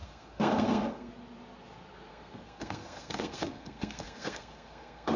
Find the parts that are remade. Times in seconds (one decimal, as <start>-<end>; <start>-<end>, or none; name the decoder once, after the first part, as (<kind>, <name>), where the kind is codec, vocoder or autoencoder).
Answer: 0.0-1.1 (codec, SNAC); 2.1-5.2